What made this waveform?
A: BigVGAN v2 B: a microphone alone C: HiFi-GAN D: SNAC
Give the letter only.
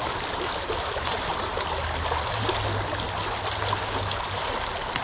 B